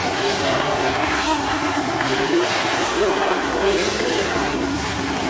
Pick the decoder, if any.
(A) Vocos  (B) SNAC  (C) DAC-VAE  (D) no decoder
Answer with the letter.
B